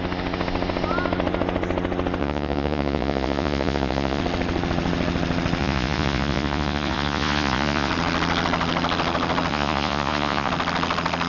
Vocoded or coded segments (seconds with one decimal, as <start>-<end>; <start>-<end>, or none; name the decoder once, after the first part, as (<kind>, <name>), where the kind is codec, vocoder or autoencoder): 2.2-4.2 (vocoder, Vocos); 5.6-7.9; 9.5-10.5